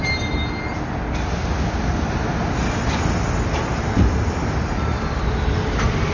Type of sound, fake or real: real